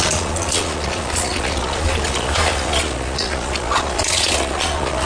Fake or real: fake